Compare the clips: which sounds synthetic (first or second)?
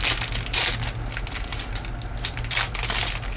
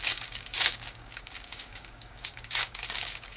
second